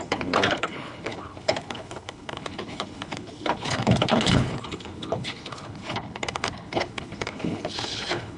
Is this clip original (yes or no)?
no